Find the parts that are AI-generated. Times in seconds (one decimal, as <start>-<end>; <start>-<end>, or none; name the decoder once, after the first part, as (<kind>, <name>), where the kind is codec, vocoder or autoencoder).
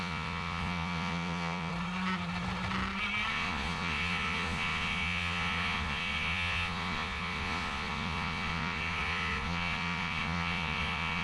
0.0-1.7 (vocoder, Vocos); 3.3-11.2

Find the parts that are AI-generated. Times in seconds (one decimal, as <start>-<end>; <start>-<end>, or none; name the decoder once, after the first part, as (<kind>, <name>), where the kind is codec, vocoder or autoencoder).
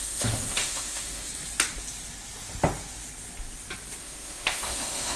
0.0-1.3 (autoencoder, DAC-VAE); 4.0-5.2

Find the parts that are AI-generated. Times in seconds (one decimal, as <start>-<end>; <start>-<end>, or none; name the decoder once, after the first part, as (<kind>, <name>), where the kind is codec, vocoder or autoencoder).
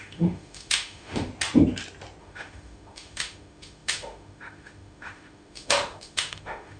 0.0-1.3 (autoencoder, DAC-VAE); 2.2-6.8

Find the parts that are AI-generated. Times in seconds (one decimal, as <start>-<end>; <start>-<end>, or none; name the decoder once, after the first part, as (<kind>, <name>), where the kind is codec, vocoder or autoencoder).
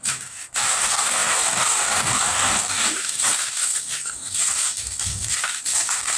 0.0-6.2 (codec, DAC)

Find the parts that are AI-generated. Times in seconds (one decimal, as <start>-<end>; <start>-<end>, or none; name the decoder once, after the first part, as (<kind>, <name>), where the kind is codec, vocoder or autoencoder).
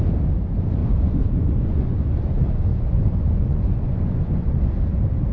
0.8-2.2 (vocoder, Vocos); 2.7-4.7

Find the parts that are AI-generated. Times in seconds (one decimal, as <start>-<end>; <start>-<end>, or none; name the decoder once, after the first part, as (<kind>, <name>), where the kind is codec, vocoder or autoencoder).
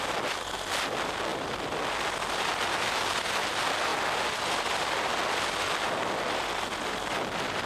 1.3-1.9 (vocoder, BigVGAN v2)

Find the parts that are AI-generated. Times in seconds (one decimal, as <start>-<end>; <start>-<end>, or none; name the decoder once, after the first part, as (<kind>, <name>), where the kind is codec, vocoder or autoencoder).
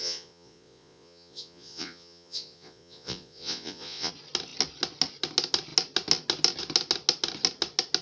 0.0-4.1 (vocoder, Vocos)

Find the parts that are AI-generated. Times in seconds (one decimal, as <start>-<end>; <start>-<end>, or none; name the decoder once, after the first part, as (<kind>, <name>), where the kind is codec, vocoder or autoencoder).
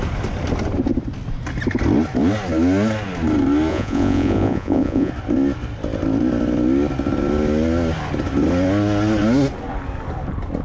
3.7-5.1 (vocoder, Vocos)